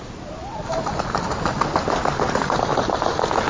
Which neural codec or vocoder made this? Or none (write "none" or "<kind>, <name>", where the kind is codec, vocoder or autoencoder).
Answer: none